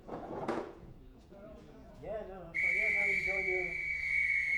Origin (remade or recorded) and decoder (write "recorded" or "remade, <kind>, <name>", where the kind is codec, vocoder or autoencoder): remade, vocoder, Vocos